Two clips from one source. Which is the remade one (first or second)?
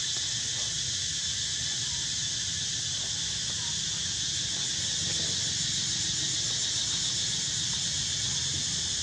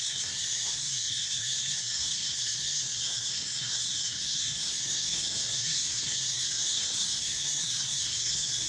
second